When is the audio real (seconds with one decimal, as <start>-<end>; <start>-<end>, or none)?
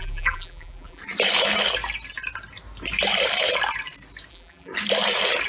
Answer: 1.0-4.3; 4.7-5.5